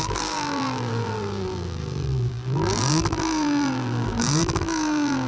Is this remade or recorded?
remade